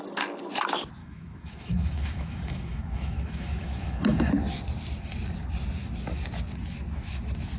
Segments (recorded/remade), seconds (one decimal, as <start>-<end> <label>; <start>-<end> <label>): 0.0-1.0 recorded; 1.0-4.2 remade; 4.2-7.6 recorded